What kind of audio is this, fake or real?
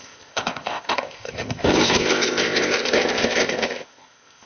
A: fake